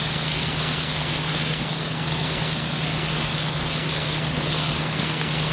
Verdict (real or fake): fake